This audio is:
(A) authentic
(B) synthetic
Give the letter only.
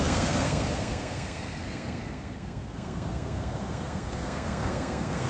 B